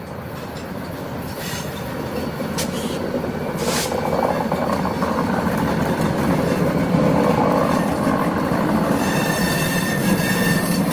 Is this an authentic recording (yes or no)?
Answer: no